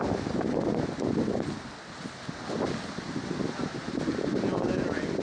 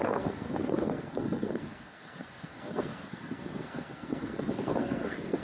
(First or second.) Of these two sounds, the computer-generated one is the second